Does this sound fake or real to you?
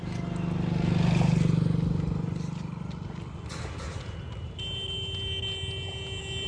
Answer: real